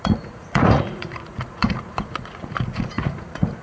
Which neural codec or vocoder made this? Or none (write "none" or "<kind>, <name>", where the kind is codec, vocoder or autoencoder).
vocoder, Vocos